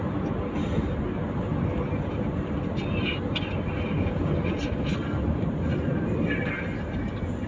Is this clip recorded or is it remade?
recorded